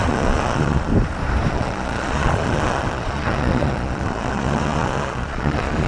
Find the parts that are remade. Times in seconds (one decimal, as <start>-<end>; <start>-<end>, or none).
0.0-0.9; 1.5-5.9